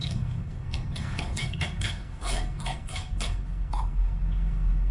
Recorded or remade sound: remade